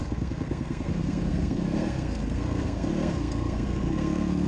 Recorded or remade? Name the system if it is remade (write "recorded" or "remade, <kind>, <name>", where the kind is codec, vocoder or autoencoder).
remade, codec, SNAC